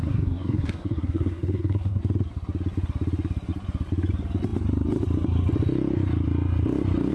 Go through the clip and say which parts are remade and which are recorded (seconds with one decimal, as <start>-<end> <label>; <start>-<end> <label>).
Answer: 0.0-2.0 remade; 2.0-7.1 recorded